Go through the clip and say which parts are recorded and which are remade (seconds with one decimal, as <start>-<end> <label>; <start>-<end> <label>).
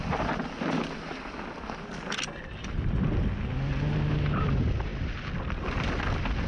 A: 0.0-6.5 recorded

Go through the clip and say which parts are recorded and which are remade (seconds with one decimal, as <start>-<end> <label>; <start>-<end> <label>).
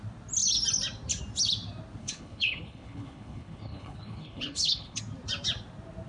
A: 0.0-2.0 recorded; 2.0-5.0 remade; 5.0-6.1 recorded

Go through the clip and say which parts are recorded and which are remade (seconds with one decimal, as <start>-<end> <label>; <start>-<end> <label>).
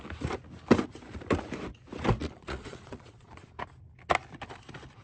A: 0.0-2.2 recorded; 2.2-3.6 remade; 3.6-5.0 recorded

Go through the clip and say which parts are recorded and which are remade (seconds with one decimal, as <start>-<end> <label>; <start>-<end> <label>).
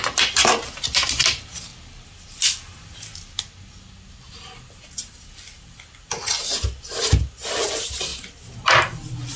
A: 0.0-9.4 recorded